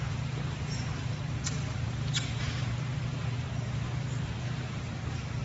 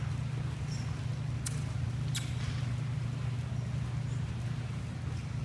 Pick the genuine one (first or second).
second